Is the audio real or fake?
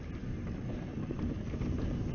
real